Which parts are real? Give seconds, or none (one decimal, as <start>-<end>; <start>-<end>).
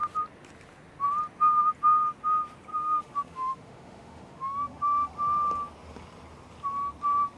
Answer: 0.0-2.7; 5.1-7.4